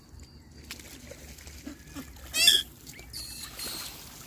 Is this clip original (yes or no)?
yes